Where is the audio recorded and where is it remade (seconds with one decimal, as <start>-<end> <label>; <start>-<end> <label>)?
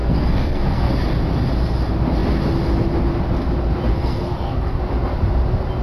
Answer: 0.0-0.9 remade; 0.9-3.9 recorded; 3.9-4.8 remade; 4.8-5.8 recorded